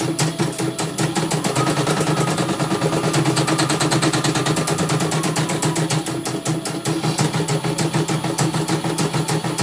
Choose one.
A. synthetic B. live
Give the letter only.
B